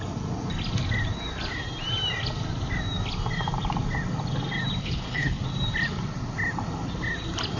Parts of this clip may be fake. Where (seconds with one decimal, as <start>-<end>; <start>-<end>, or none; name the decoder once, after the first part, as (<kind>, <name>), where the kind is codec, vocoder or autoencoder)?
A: 4.8-5.4 (codec, HILCodec)